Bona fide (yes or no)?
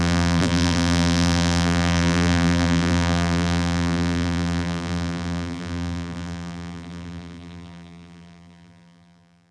no